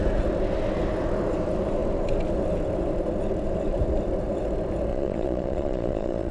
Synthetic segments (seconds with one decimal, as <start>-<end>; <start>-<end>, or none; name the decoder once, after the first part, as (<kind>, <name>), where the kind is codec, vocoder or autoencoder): 4.9-6.3 (vocoder, Vocos)